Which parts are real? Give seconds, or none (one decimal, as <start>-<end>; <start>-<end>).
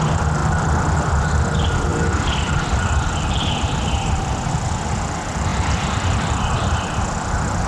0.4-1.2